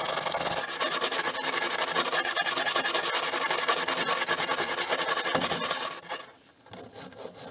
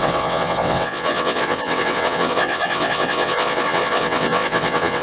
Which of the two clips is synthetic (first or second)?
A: second